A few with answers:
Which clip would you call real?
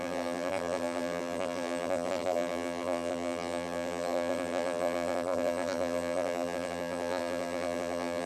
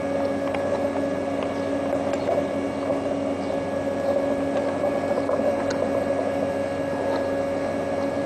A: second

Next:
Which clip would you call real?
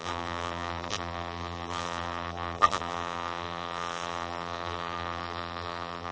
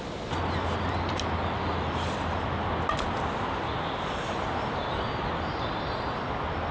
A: second